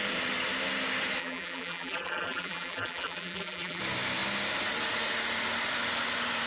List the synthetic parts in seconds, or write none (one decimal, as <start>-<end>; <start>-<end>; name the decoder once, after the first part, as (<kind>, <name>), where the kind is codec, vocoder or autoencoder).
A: 1.2-3.8 (vocoder, BigVGAN v2)